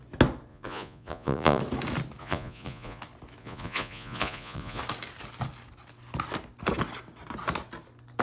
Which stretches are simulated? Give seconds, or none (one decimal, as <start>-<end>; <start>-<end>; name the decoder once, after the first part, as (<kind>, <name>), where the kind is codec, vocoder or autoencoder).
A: 0.5-1.6 (vocoder, Vocos); 2.2-3.0; 3.4-4.8